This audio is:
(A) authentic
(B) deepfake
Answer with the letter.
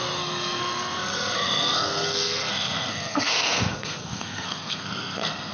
B